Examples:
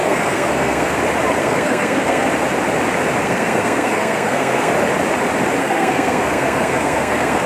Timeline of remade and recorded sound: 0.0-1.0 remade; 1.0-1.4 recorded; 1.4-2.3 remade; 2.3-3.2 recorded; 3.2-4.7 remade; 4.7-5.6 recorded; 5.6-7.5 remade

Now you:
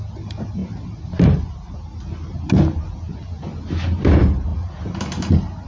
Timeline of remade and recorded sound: 0.0-5.7 recorded

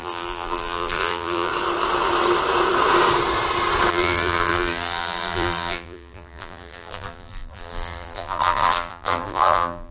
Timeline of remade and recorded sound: 0.0-1.5 remade; 1.5-3.9 recorded; 3.9-9.9 remade

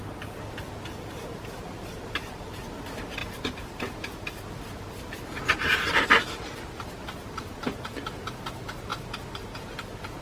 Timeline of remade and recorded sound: 0.0-10.2 recorded

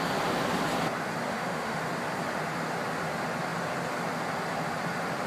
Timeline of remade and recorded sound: 0.0-1.3 recorded; 1.3-1.8 remade; 1.8-5.3 recorded

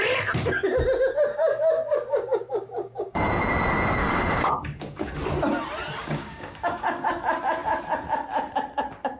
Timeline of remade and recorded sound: 0.0-1.3 recorded; 1.3-3.3 remade; 3.3-4.0 recorded; 4.0-5.2 remade; 5.2-6.0 recorded; 6.0-7.1 remade; 7.1-9.2 recorded

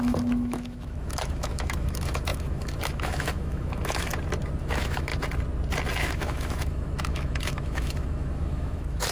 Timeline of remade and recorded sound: 0.0-4.1 remade; 4.1-4.6 recorded; 4.6-5.1 remade; 5.1-6.0 recorded; 6.0-9.1 remade